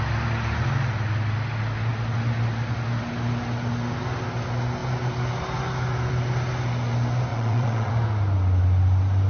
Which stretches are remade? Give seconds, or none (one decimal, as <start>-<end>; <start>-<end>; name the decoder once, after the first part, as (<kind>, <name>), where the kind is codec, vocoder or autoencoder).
7.3-7.9 (vocoder, WaveNeXt)